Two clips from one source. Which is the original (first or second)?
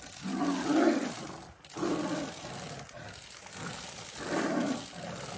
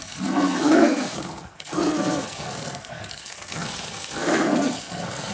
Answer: first